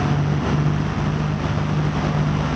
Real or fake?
real